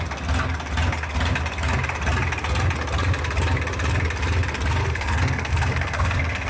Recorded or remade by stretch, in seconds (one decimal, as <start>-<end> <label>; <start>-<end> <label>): 0.0-4.8 recorded; 4.8-6.5 remade

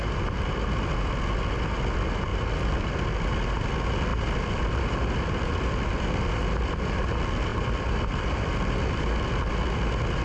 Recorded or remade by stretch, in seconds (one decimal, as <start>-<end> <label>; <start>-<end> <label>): 0.0-2.3 recorded; 2.3-2.9 remade; 2.9-4.1 recorded; 4.1-5.6 remade; 5.6-7.5 recorded; 7.5-8.2 remade; 8.2-10.2 recorded